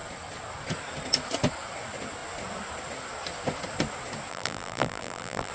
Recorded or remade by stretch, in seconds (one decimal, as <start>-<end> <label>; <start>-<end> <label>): 0.0-4.3 recorded; 4.3-5.5 remade